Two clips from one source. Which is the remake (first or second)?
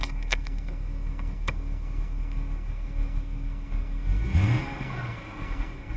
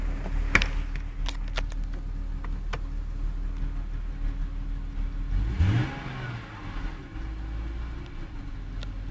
first